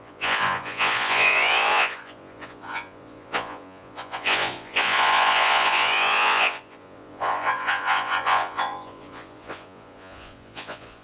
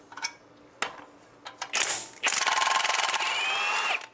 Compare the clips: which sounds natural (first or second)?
second